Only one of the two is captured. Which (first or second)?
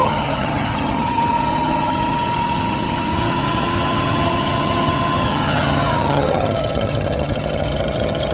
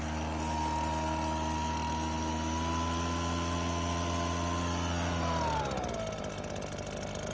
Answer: second